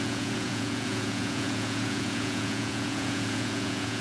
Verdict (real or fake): fake